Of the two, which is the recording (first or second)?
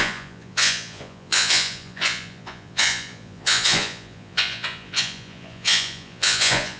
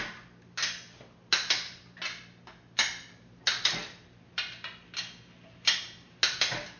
second